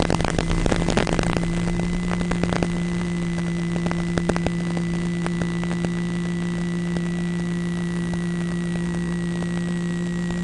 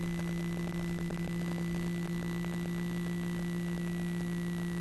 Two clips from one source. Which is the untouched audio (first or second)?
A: second